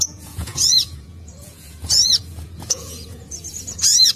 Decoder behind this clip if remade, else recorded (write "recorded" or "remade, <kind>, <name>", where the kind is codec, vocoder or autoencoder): remade, vocoder, Vocos